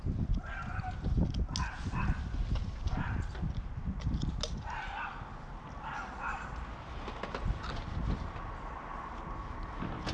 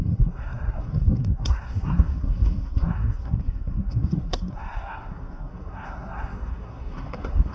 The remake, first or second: second